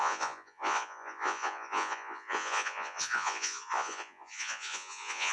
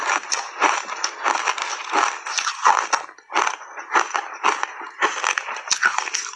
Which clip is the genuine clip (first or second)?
second